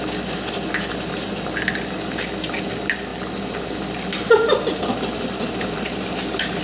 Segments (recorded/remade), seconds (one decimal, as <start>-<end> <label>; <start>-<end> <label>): 0.0-6.6 recorded